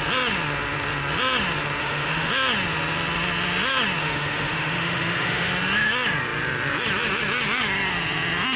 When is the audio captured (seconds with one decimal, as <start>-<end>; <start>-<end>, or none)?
0.0-1.8; 2.3-4.0; 5.5-8.6